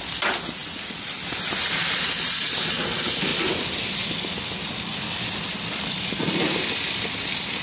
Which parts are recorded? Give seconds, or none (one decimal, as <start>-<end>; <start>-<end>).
0.0-7.6